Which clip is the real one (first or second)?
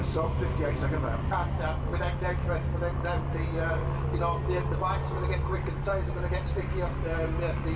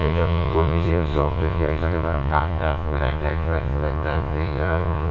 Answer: first